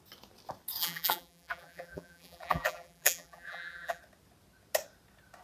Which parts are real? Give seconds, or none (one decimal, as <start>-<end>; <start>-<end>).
0.0-0.8; 4.0-5.4